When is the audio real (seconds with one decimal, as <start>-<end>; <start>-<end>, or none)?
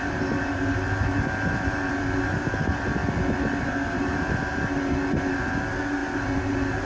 3.0-3.6